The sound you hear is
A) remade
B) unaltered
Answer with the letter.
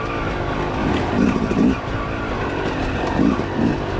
B